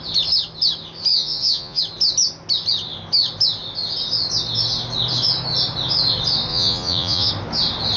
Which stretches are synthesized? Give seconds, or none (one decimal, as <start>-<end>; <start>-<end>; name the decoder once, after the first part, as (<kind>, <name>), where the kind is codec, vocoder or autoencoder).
1.1-1.8 (vocoder, Vocos); 6.5-7.3